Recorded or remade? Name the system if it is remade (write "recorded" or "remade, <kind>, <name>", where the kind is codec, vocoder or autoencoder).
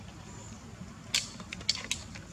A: recorded